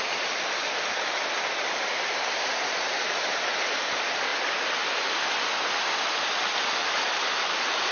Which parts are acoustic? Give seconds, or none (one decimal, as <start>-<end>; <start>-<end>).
0.0-7.9